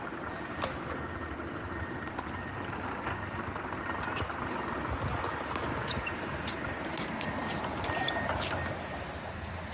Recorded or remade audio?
recorded